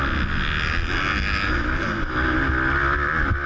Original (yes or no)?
yes